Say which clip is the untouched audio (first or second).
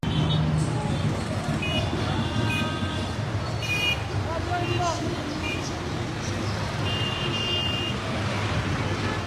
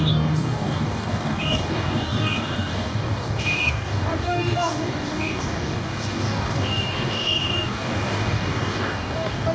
first